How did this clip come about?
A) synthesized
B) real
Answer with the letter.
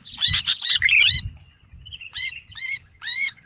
A